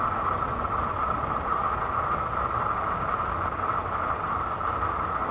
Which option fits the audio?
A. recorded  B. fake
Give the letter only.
A